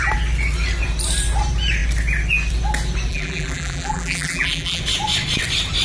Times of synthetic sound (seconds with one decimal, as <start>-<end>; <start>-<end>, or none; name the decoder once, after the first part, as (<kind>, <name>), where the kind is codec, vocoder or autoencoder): 3.1-4.8 (vocoder, BigVGAN v2)